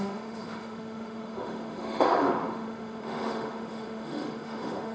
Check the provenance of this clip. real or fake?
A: fake